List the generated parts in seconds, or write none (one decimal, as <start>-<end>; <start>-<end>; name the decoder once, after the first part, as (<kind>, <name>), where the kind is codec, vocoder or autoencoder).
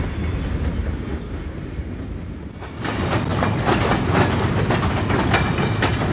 0.8-2.1 (vocoder, BigVGAN v2); 3.3-4.6